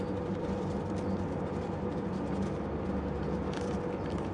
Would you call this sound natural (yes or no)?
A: yes